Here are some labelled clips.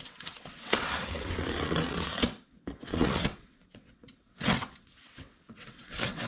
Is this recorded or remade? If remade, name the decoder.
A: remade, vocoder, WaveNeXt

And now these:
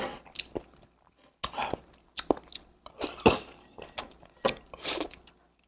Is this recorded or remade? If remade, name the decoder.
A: recorded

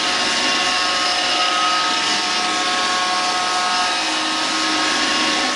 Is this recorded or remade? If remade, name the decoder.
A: recorded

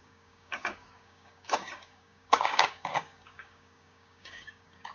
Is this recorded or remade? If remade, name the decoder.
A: remade, codec, DAC